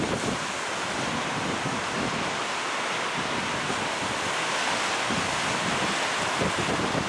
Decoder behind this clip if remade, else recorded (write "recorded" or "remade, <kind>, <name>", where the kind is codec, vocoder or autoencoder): recorded